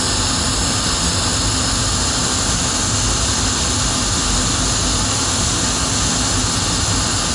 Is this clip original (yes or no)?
yes